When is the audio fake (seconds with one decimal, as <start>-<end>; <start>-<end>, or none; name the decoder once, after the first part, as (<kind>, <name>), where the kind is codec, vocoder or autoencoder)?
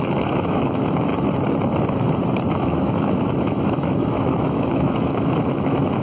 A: 0.0-1.1 (autoencoder, DAC-VAE); 2.5-6.0